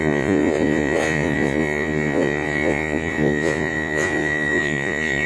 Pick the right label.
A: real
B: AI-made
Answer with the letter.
B